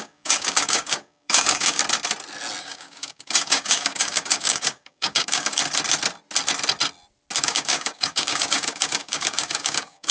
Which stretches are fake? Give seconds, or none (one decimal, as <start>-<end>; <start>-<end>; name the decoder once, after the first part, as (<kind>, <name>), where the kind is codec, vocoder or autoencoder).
0.0-1.8 (codec, DAC); 2.6-5.6; 7.4-10.1